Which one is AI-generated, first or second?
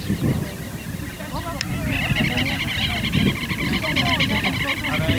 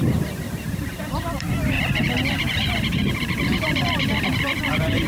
second